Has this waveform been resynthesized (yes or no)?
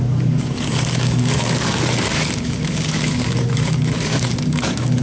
yes